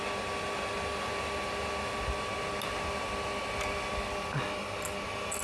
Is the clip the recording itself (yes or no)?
yes